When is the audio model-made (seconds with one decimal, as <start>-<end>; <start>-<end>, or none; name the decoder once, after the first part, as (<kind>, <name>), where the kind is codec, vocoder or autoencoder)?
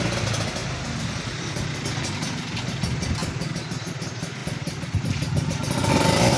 none